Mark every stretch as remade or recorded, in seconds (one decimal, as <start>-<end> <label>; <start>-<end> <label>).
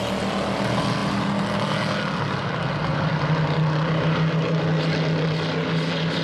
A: 0.0-6.2 recorded